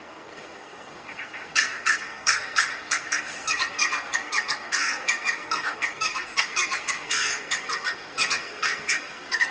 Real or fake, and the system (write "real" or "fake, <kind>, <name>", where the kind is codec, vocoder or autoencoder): fake, codec, SNAC